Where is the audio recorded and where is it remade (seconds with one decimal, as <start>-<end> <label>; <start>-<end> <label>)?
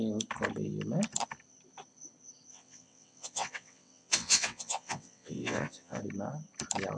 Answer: 0.0-2.5 recorded; 2.5-6.0 remade; 6.0-7.0 recorded